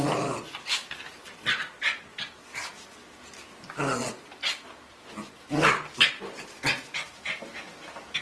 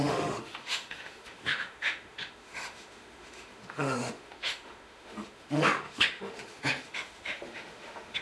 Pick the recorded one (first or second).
first